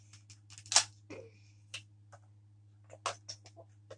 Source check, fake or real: real